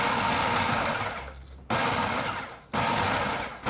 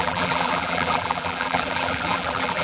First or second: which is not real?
second